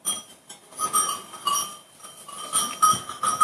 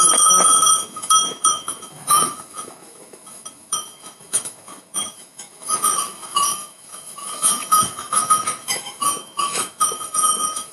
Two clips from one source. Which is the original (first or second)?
first